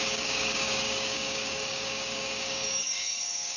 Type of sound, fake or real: fake